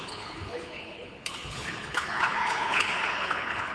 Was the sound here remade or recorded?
remade